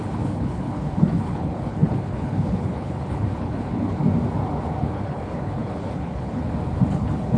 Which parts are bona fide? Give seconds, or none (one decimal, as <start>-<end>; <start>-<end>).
4.0-4.8; 6.4-6.9